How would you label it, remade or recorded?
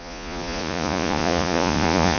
remade